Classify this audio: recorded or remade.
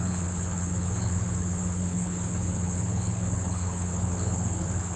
remade